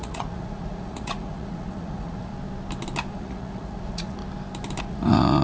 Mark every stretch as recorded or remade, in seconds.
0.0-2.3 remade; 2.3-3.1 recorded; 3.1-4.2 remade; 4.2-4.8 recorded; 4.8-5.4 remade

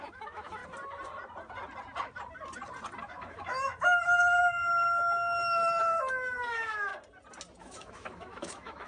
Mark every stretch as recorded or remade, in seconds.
0.0-0.6 remade; 0.6-3.0 recorded; 3.0-6.9 remade; 6.9-7.6 recorded; 7.6-8.9 remade

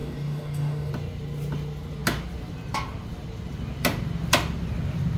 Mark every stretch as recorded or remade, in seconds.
0.0-0.9 remade; 0.9-5.2 recorded